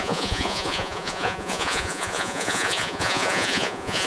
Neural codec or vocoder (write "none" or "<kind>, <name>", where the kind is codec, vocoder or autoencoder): vocoder, Vocos